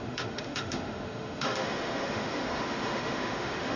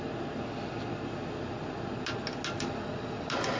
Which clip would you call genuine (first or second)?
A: second